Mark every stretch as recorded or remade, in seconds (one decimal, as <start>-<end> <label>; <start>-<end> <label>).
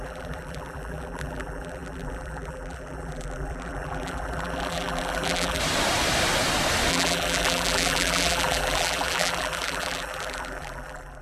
0.0-5.6 remade; 5.6-6.9 recorded; 6.9-11.2 remade